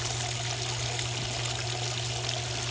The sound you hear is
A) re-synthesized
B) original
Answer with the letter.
B